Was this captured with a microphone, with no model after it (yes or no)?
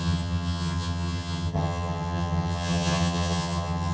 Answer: no